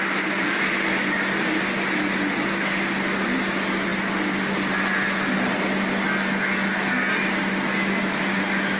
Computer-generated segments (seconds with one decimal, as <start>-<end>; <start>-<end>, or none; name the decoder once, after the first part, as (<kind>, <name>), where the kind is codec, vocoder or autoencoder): none